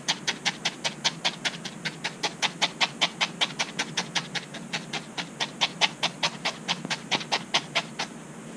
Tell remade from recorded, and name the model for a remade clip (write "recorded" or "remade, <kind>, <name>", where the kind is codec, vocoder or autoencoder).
recorded